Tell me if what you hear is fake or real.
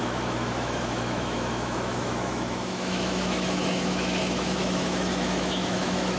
fake